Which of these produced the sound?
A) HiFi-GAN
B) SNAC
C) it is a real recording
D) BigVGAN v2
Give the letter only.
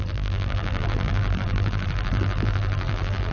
D